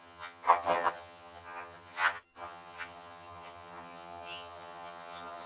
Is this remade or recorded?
remade